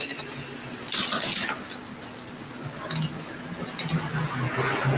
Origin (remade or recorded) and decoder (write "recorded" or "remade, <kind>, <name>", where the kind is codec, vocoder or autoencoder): recorded